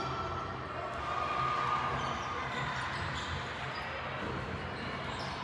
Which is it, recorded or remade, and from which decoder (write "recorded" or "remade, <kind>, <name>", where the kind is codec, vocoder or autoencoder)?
recorded